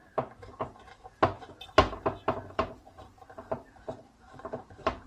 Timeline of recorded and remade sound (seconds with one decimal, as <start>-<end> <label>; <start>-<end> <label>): 0.0-2.5 recorded; 2.5-5.1 remade